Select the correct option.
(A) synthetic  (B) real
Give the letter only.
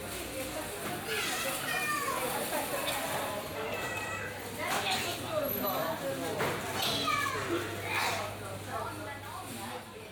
B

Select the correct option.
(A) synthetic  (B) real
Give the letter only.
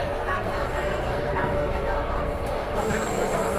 A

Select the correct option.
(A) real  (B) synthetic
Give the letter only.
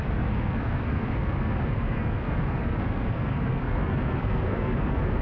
B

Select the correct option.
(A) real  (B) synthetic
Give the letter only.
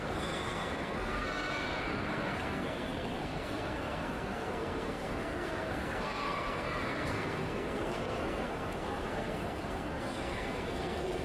B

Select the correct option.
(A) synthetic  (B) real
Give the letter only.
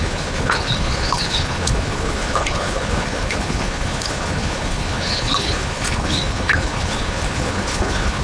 A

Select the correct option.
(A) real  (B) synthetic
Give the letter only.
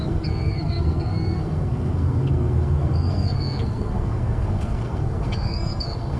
B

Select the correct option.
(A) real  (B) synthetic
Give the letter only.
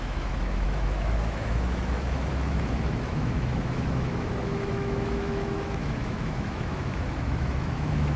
B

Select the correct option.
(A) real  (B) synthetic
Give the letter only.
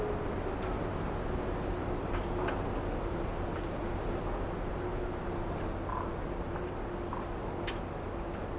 A